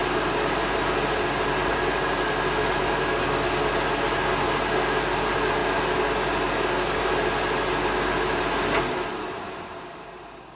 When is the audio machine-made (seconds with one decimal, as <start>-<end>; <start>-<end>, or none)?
none

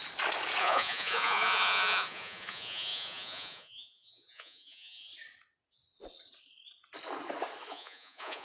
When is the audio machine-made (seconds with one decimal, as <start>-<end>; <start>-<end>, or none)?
0.6-5.1; 7.7-8.4

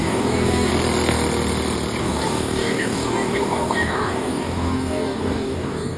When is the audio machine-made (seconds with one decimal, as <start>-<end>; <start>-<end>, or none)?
0.0-0.7; 2.0-6.0

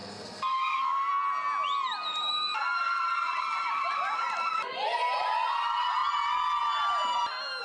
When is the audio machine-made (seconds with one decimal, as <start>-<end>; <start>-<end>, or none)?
0.0-1.1

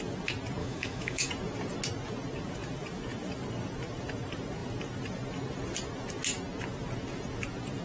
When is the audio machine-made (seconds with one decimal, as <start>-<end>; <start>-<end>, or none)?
0.6-1.3

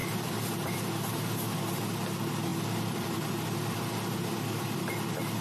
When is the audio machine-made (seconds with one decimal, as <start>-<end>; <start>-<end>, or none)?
0.0-0.8; 2.5-4.9

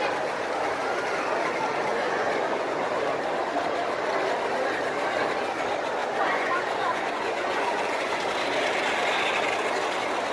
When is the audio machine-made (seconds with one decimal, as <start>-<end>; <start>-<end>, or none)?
1.9-2.9; 6.0-8.2